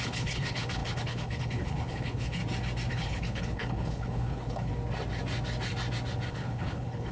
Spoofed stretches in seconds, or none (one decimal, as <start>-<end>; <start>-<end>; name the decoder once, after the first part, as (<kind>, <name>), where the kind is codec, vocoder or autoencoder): 0.0-2.4 (codec, HILCodec); 2.9-4.7; 6.3-7.1